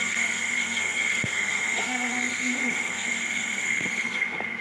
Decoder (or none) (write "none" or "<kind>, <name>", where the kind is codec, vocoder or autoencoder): codec, SNAC